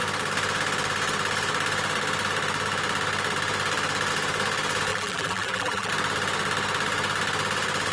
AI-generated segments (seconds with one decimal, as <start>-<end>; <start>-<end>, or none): 4.9-5.9